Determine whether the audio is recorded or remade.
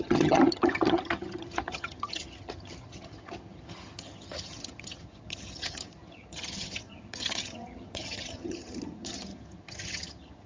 remade